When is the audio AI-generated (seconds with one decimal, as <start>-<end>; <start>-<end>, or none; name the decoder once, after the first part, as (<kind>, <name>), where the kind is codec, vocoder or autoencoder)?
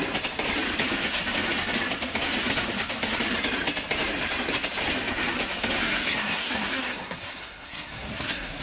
5.8-8.6 (codec, SNAC)